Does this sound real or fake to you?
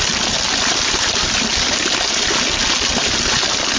real